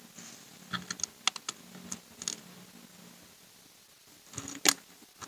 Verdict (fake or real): real